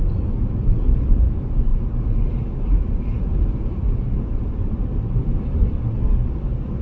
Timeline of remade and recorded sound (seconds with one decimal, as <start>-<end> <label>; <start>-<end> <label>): 0.0-1.7 recorded; 1.7-5.2 remade; 5.2-6.8 recorded